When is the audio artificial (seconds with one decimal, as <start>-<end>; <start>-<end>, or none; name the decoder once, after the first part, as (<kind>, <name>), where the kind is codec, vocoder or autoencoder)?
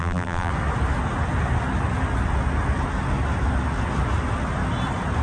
0.0-0.5 (vocoder, BigVGAN v2)